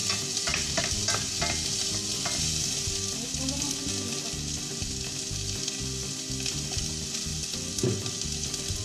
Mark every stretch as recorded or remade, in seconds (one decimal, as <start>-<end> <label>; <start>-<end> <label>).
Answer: 0.0-0.8 remade; 0.8-8.8 recorded